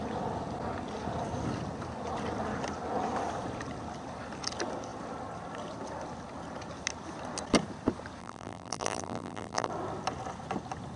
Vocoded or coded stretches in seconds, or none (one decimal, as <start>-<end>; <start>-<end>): 8.2-9.7